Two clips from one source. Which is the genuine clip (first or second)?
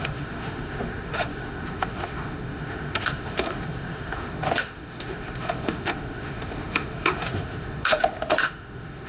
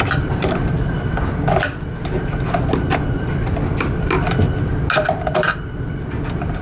second